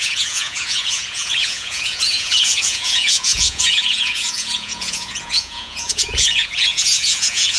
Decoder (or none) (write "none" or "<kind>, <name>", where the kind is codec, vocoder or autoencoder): vocoder, Vocos